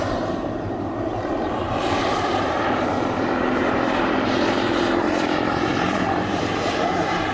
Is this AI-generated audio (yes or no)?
yes